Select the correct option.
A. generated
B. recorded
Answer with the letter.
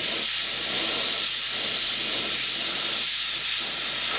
B